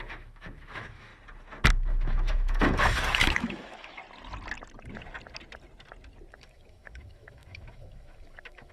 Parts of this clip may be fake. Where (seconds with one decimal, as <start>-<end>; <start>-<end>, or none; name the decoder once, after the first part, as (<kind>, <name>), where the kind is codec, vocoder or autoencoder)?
0.0-1.1 (autoencoder, DAC-VAE); 1.7-4.0; 6.3-8.7